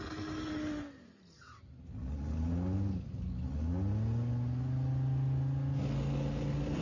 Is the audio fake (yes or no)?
no